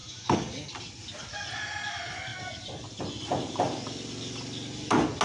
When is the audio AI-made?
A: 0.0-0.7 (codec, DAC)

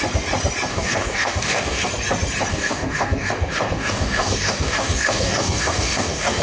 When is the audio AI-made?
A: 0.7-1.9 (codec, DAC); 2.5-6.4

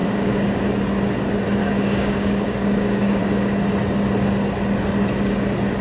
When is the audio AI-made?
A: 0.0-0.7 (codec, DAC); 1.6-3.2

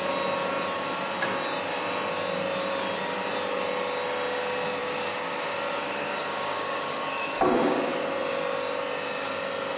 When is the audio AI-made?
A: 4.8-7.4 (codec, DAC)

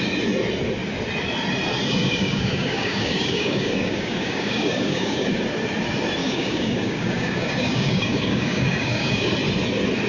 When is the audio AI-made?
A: 2.0-5.4 (codec, DAC); 6.2-9.3